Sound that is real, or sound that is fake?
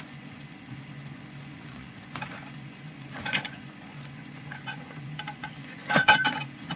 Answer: fake